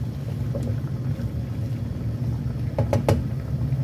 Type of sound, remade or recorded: recorded